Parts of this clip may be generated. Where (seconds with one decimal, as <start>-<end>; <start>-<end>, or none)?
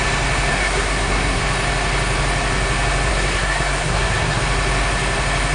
0.5-1.4; 3.1-4.4